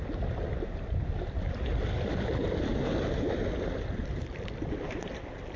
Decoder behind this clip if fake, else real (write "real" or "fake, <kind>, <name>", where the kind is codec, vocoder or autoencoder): real